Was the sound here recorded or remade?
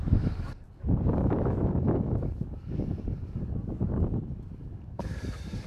remade